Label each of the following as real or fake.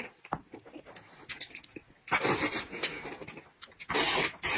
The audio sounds real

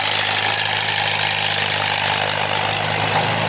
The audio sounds real